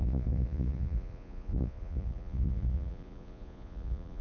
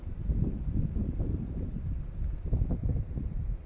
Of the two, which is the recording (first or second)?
second